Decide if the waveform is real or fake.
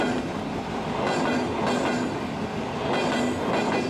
real